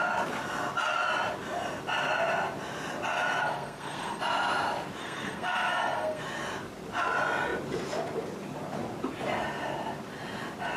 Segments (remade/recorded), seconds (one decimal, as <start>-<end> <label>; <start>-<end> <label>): 0.0-3.4 recorded; 3.4-4.2 remade; 4.2-5.0 recorded; 5.0-6.2 remade; 6.2-10.8 recorded